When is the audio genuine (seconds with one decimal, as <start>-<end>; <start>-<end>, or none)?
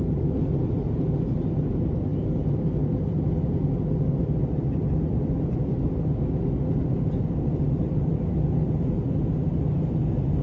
0.0-10.4